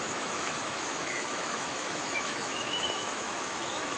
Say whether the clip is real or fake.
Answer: fake